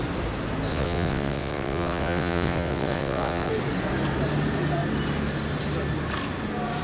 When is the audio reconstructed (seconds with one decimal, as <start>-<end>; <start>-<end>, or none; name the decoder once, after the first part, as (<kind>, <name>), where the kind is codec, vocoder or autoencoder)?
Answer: 0.7-3.5 (vocoder, WaveNeXt)